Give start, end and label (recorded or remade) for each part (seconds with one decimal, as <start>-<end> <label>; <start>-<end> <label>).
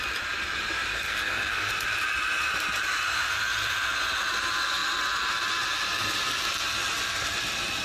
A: 0.0-0.9 recorded; 0.9-1.7 remade; 1.7-7.8 recorded